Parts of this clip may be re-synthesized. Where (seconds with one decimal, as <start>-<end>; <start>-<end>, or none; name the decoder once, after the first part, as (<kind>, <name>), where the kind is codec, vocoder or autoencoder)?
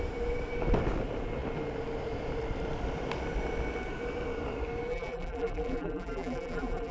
4.9-6.9 (vocoder, BigVGAN v2)